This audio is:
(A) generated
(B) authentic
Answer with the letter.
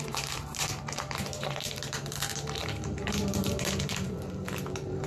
A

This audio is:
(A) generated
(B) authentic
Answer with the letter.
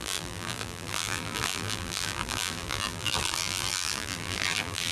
A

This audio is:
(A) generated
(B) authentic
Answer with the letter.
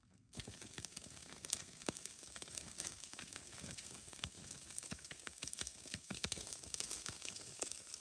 A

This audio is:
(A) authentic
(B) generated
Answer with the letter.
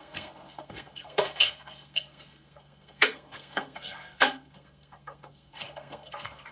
B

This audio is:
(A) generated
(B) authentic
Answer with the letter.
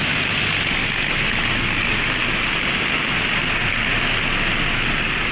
B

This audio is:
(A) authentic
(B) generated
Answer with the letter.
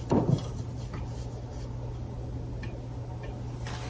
A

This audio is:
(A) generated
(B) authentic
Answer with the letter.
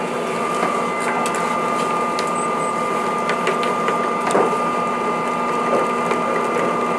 B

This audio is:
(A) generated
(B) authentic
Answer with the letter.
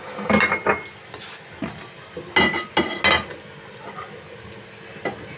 B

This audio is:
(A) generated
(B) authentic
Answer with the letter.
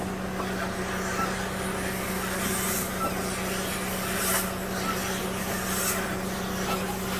B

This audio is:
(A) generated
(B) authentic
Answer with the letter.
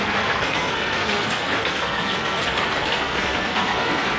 A